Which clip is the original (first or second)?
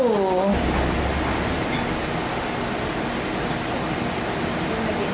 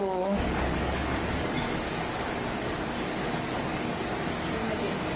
first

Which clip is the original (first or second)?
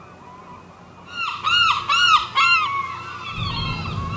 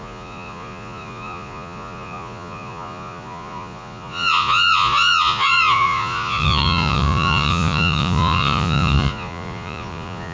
first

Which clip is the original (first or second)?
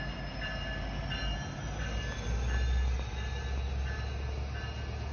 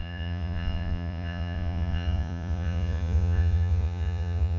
first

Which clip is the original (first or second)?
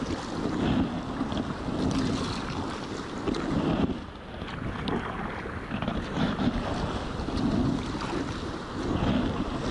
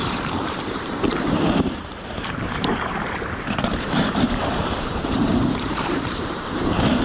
first